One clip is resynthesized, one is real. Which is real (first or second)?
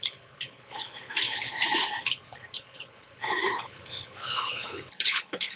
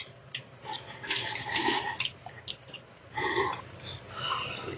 second